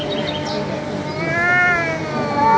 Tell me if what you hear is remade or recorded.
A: recorded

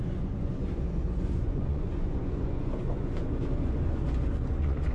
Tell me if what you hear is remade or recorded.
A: remade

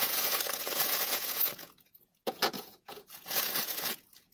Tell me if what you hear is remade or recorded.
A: remade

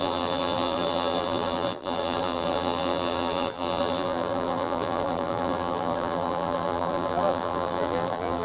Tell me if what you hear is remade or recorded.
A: remade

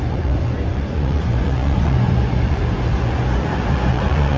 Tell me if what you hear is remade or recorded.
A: remade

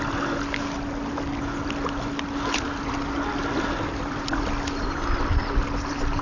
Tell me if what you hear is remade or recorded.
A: recorded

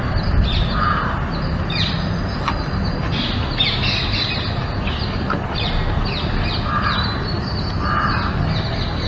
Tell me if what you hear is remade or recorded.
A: recorded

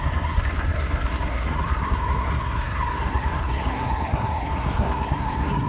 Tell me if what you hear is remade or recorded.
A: remade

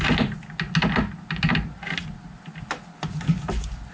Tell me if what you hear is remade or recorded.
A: recorded